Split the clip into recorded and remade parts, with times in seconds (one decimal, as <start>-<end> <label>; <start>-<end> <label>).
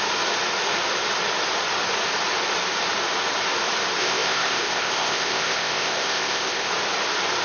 0.0-4.0 recorded; 4.0-6.7 remade; 6.7-7.4 recorded